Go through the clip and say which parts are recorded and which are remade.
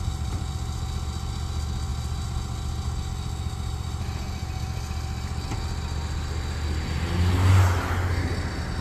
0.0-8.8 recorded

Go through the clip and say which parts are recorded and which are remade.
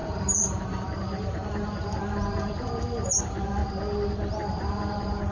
0.0-3.6 remade; 3.6-4.3 recorded; 4.3-5.3 remade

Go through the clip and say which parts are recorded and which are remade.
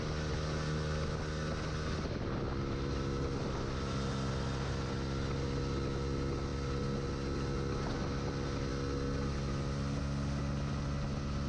0.0-11.5 recorded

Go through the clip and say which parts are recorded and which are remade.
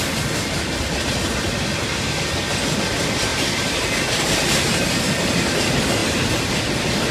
0.0-3.3 recorded; 3.3-4.8 remade; 4.8-6.0 recorded; 6.0-6.6 remade; 6.6-7.1 recorded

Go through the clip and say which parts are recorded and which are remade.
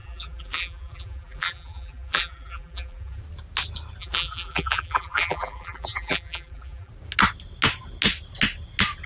0.0-3.2 remade; 3.2-4.0 recorded; 4.0-6.9 remade; 6.9-9.1 recorded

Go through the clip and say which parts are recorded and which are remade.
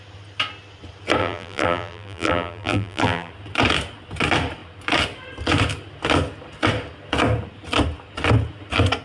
0.0-1.2 recorded; 1.2-3.3 remade; 3.3-9.0 recorded